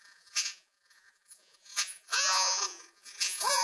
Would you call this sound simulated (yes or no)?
yes